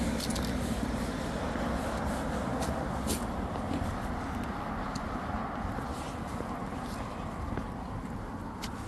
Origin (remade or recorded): recorded